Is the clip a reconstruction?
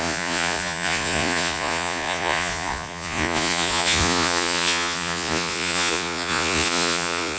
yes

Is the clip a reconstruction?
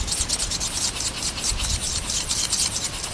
no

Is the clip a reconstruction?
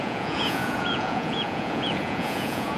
yes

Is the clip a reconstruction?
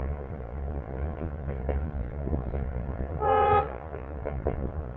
yes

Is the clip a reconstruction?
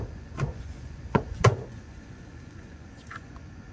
yes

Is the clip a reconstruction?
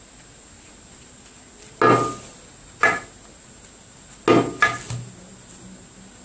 no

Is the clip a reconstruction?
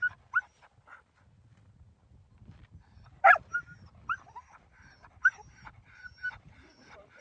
no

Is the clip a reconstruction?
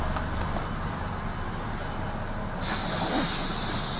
no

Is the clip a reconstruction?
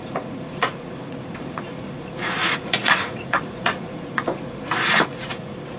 yes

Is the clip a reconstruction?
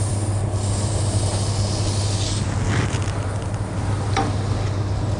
no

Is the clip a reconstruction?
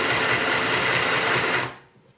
no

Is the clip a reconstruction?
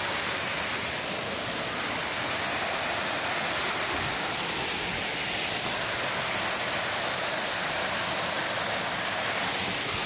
no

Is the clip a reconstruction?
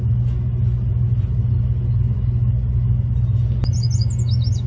no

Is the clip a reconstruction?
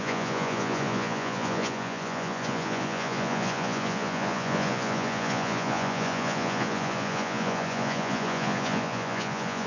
yes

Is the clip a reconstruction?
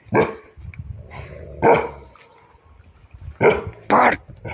no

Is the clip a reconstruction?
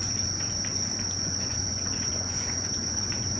yes